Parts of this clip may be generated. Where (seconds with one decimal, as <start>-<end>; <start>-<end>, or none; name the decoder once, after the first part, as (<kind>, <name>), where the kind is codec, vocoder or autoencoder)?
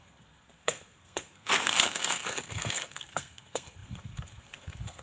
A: 0.0-5.0 (codec, SNAC)